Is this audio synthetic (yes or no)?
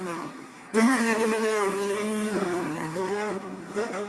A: yes